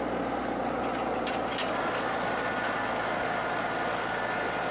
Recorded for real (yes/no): yes